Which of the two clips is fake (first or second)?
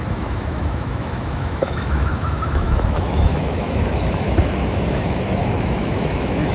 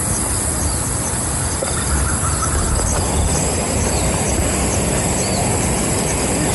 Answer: first